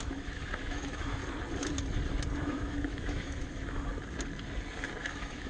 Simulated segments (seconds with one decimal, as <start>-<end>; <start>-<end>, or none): 0.0-1.2; 2.4-3.9; 5.0-5.5